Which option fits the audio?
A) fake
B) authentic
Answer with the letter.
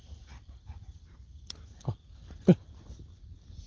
B